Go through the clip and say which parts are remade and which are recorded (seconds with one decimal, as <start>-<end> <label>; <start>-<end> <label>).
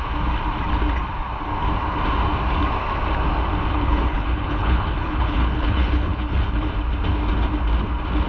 0.0-3.7 recorded; 3.7-6.7 remade; 6.7-8.3 recorded